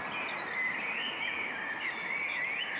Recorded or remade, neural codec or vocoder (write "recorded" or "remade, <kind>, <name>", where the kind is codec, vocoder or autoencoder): recorded